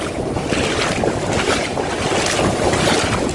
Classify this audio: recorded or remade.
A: recorded